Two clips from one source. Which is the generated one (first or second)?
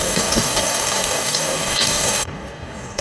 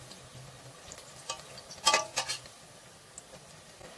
first